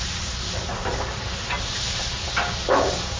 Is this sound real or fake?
real